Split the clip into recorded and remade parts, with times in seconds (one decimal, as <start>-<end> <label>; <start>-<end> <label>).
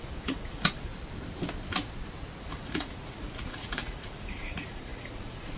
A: 0.0-0.9 remade; 0.9-2.4 recorded; 2.4-5.6 remade